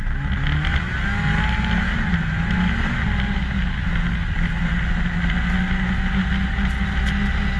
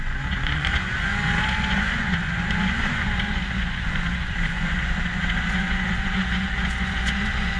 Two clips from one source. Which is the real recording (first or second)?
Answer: first